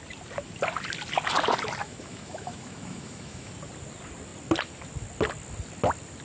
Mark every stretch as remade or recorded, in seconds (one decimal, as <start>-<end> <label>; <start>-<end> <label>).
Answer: 0.0-1.8 recorded; 1.8-3.5 remade; 3.5-6.2 recorded